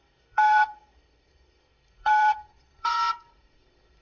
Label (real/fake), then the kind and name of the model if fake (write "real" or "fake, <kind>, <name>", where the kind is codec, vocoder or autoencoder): fake, codec, SNAC